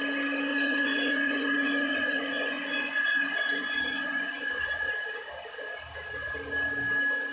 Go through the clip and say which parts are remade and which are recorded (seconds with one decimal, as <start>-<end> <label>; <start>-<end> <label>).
0.0-0.5 recorded; 0.5-4.9 remade; 4.9-7.3 recorded